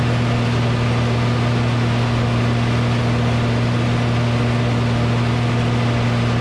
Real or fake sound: real